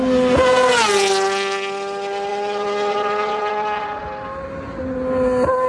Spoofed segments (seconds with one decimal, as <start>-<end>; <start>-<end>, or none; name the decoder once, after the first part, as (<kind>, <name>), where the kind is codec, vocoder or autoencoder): 2.3-4.0 (vocoder, Vocos)